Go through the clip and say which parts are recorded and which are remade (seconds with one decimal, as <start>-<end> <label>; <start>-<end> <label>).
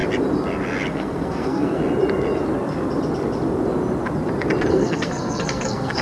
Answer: 0.0-0.9 recorded; 0.9-1.8 remade; 1.8-4.7 recorded; 4.7-6.0 remade